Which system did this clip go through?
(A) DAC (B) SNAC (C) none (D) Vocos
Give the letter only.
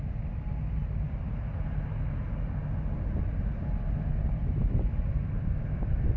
C